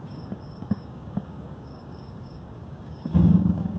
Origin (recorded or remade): remade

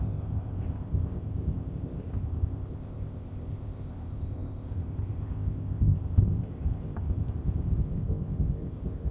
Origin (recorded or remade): remade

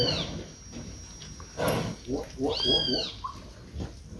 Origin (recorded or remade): recorded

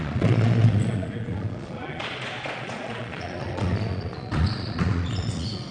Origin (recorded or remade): remade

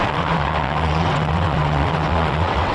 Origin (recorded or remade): remade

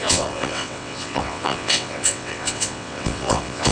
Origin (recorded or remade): remade